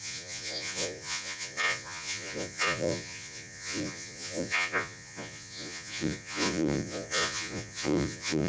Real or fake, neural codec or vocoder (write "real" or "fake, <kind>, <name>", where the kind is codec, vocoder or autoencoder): fake, vocoder, Vocos